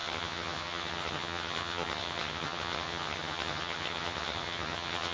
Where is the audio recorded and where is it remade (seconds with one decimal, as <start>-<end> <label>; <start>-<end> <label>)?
0.0-5.1 remade